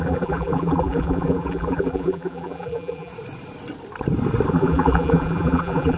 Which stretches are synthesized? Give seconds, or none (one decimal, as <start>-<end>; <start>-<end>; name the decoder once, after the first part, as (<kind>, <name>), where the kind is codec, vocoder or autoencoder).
0.0-3.1 (vocoder, BigVGAN v2); 4.5-6.0